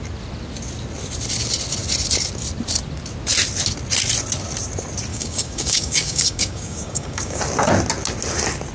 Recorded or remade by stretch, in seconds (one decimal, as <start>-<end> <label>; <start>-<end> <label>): 0.0-5.1 recorded; 5.1-7.4 remade; 7.4-8.7 recorded